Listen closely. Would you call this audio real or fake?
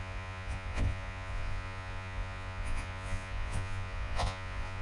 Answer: fake